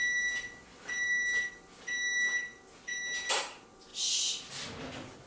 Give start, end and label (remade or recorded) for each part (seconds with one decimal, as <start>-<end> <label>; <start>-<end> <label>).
0.0-5.3 recorded